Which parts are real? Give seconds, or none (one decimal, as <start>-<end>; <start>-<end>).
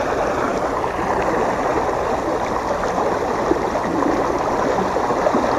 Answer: 0.0-5.6